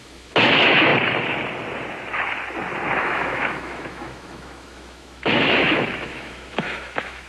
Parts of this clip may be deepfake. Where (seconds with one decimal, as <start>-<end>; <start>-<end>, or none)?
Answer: 0.0-0.9; 3.0-7.3